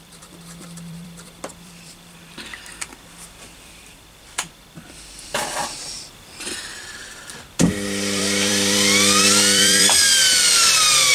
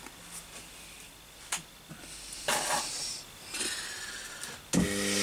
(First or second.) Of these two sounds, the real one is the second